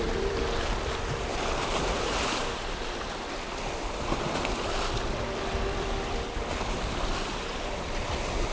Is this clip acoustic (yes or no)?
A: no